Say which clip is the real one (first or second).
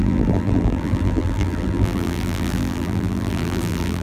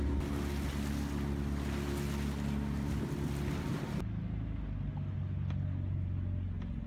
second